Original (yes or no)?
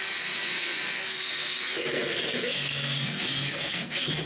no